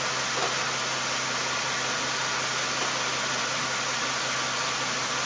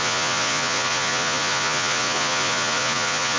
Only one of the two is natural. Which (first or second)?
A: first